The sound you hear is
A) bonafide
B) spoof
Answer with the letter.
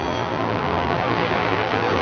B